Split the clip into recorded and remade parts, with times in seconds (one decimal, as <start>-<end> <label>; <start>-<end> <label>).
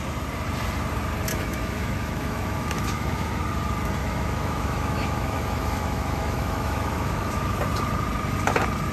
0.0-1.3 recorded; 1.3-3.4 remade; 3.4-4.0 recorded; 4.0-7.6 remade; 7.6-8.9 recorded